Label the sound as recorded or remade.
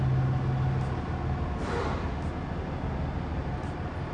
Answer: recorded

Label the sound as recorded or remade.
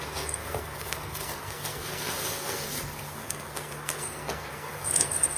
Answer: remade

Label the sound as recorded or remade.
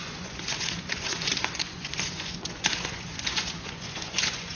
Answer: remade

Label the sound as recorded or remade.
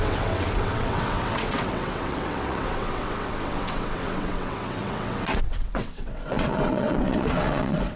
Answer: remade